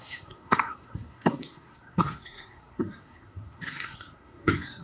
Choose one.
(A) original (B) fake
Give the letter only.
B